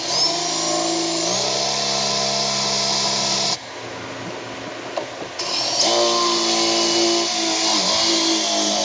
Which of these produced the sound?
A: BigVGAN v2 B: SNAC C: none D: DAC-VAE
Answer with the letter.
C